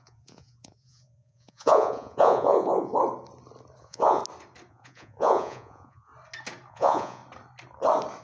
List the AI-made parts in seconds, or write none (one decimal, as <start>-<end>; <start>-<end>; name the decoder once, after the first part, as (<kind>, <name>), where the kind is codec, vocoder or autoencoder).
0.0-2.9 (vocoder, Vocos); 3.8-4.2; 4.7-6.1; 6.7-7.2